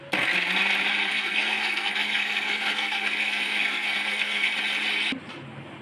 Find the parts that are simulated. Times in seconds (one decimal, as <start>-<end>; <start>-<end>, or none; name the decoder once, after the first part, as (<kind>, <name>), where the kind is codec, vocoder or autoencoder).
1.0-4.5 (codec, SNAC)